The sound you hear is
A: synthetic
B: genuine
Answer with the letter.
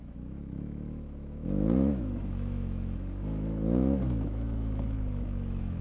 A